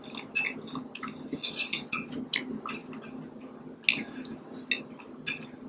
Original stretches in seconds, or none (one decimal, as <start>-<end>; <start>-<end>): 0.0-1.4; 2.2-5.7